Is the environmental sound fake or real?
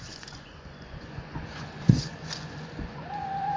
fake